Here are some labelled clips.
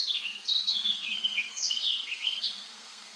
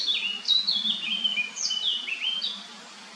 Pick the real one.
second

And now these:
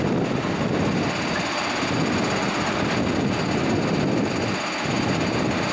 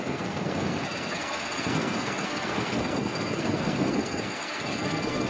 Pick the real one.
first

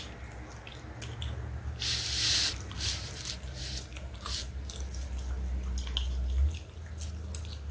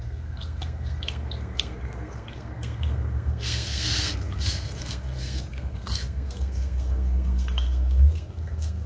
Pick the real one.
first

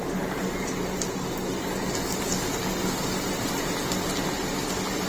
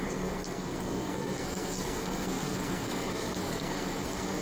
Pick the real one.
first